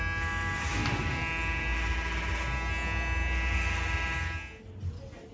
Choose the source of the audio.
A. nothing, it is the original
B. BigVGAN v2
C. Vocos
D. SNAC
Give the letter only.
A